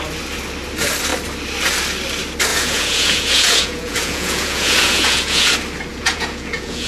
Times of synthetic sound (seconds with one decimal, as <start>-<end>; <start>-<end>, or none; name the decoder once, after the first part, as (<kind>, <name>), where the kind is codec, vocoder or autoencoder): 2.5-5.5 (vocoder, Vocos); 5.9-6.9